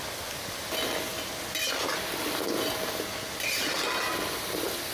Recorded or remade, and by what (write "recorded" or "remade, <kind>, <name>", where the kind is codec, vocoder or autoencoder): recorded